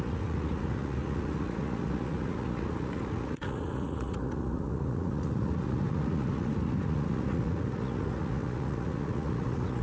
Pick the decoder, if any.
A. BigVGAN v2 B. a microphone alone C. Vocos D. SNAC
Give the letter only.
C